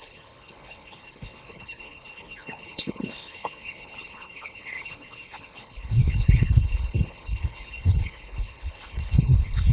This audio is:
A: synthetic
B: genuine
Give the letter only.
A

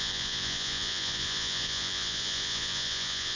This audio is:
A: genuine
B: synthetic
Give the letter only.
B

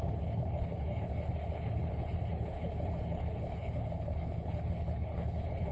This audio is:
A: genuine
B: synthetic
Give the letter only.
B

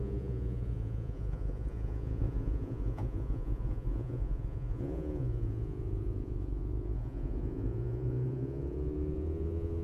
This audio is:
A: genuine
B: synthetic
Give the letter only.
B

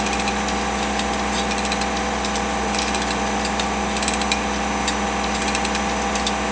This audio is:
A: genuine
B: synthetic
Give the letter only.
A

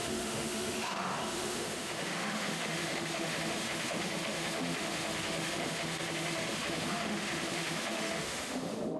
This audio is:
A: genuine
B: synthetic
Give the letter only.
B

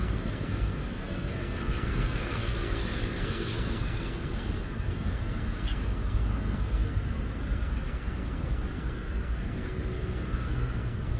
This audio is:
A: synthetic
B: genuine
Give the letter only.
A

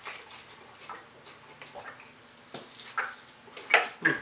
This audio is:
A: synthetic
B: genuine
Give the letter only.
B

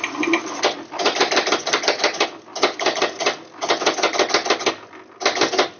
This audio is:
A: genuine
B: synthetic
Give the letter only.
A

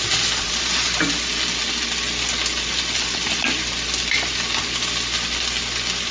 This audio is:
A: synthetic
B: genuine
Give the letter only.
B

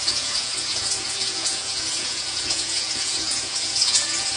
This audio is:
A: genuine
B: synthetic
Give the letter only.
B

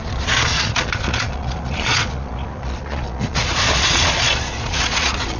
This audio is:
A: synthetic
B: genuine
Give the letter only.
A